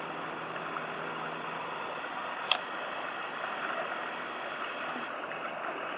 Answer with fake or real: real